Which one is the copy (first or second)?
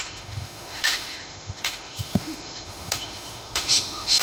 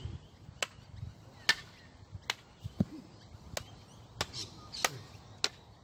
first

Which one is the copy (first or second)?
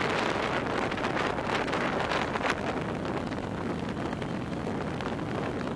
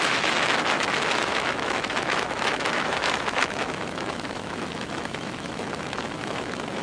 second